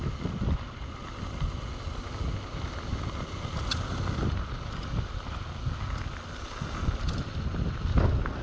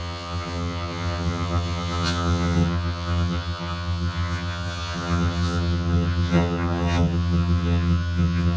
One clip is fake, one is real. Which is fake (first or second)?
second